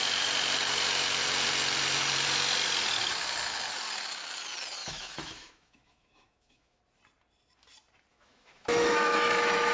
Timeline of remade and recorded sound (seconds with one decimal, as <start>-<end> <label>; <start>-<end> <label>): 0.0-4.8 recorded; 4.8-6.8 remade; 6.8-8.1 recorded; 8.1-9.7 remade